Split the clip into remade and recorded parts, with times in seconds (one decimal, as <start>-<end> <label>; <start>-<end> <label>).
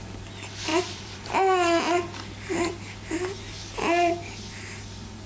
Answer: 0.0-0.7 recorded; 0.7-1.3 remade; 1.3-5.3 recorded